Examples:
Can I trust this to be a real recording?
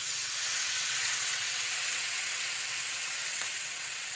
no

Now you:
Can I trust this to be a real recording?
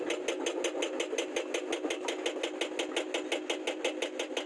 yes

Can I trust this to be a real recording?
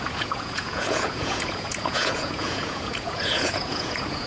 no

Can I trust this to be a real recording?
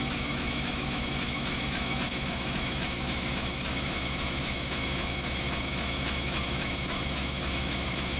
no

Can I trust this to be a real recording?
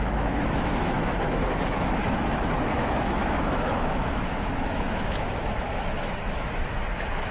no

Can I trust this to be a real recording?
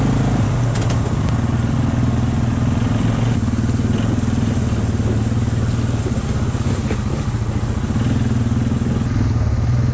yes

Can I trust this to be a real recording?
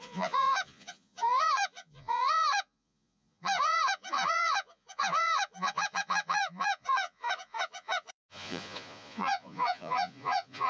no